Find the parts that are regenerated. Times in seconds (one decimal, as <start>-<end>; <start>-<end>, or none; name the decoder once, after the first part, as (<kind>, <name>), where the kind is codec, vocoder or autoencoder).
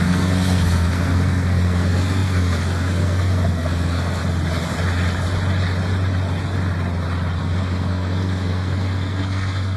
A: 0.0-4.2 (codec, SNAC); 7.4-9.8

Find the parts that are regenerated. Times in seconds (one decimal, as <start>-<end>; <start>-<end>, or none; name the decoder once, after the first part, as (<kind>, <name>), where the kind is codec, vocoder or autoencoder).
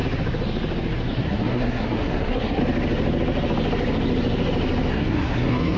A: 1.1-2.6 (codec, SNAC); 4.9-5.8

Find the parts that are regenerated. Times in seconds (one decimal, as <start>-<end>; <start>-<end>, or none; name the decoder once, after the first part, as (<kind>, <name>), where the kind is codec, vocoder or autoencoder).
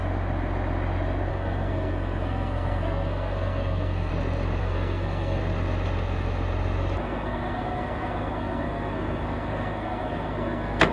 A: 1.3-4.1 (codec, SNAC); 4.6-5.4; 7.0-10.9